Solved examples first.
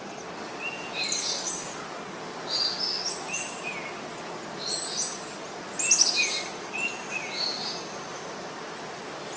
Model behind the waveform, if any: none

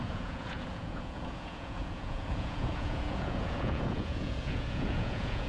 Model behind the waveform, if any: vocoder, Vocos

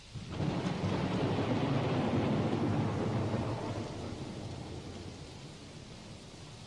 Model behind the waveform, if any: none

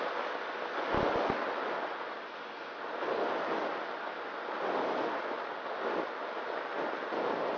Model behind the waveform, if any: none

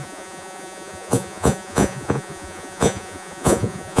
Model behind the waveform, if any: vocoder, Vocos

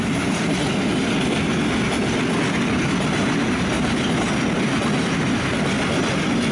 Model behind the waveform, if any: none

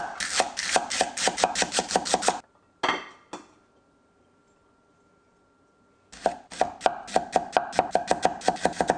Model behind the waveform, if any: none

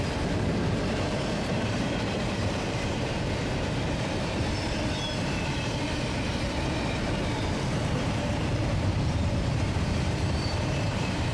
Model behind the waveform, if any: vocoder, BigVGAN v2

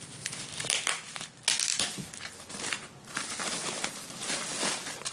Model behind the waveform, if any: none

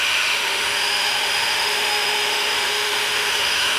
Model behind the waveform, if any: autoencoder, DAC-VAE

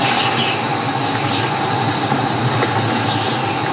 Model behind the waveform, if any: none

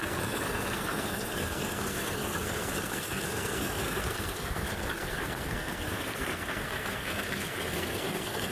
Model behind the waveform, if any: codec, SNAC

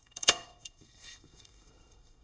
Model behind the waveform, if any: codec, SNAC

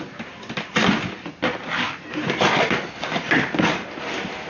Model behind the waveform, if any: none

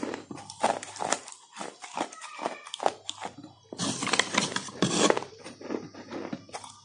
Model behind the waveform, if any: vocoder, BigVGAN v2